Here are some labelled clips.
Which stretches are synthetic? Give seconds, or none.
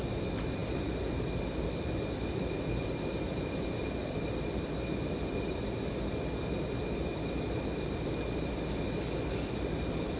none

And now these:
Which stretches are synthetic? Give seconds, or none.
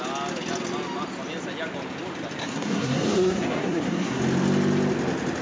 2.4-4.2 (codec, SNAC)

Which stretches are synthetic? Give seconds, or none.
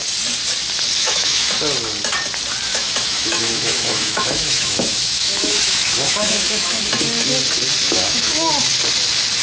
1.0-1.5 (autoencoder, DAC-VAE); 2.7-6.8; 7.8-8.5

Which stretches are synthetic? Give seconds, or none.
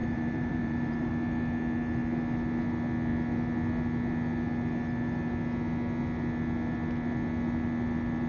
0.0-1.1 (vocoder, BigVGAN v2)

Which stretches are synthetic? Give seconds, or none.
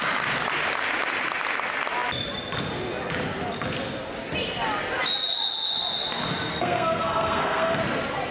6.5-7.8 (codec, SNAC)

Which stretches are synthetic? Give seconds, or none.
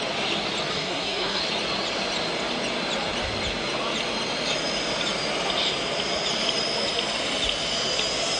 0.7-1.4 (codec, SNAC)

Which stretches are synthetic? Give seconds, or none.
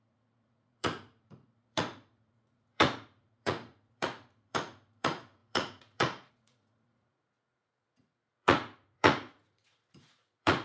0.0-10.6 (vocoder, Vocos)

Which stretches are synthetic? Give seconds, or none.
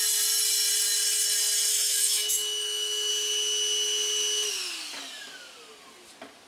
1.7-3.1 (autoencoder, DAC-VAE)